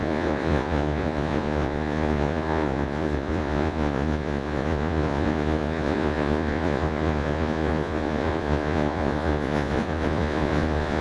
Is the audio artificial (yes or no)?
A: yes